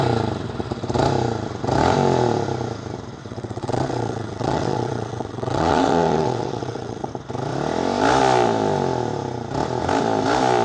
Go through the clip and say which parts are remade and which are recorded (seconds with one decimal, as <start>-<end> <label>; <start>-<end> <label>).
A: 0.0-3.2 recorded; 3.2-7.1 remade; 7.1-10.6 recorded